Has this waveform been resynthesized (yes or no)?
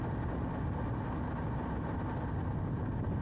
no